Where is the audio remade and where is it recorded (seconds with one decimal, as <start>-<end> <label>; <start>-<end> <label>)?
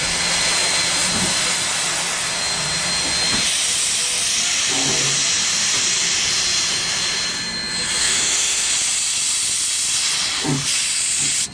0.0-8.0 recorded; 8.0-8.7 remade; 8.7-11.5 recorded